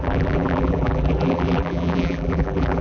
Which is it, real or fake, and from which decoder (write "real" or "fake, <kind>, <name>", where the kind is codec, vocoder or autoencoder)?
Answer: fake, vocoder, BigVGAN v2